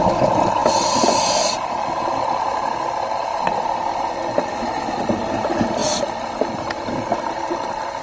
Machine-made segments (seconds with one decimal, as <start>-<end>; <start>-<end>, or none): 4.5-5.0

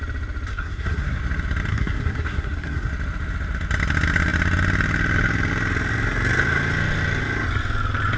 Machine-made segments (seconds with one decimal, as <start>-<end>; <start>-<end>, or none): 0.5-1.2; 1.7-2.9

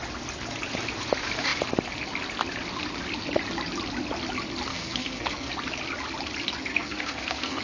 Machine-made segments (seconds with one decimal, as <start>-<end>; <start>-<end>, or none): 4.7-5.5; 6.7-7.6

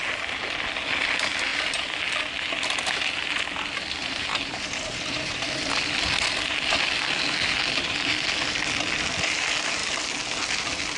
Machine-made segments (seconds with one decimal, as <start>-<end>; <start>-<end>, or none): 4.0-5.6

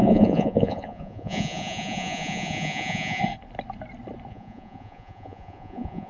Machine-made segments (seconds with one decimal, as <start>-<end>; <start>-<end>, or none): 0.0-3.2; 4.3-6.1

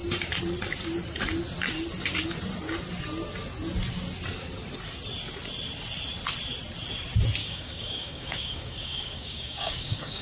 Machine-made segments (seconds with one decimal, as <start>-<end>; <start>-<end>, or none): 7.4-10.2

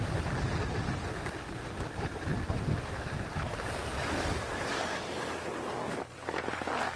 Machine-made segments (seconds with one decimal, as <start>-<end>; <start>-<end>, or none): none